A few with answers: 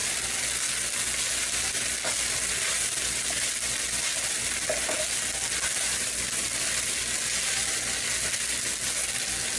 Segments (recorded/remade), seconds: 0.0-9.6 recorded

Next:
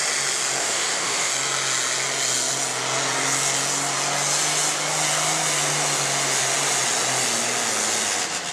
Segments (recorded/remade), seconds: 0.0-0.6 recorded; 0.6-1.3 remade; 1.3-8.5 recorded